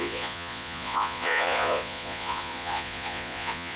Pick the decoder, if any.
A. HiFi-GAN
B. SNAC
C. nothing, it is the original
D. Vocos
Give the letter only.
D